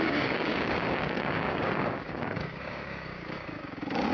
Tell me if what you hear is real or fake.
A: fake